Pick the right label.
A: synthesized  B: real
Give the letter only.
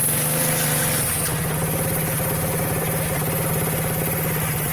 B